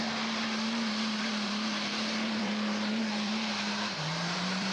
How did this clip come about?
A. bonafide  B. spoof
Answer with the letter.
B